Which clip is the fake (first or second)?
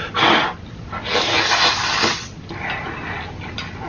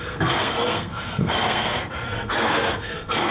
second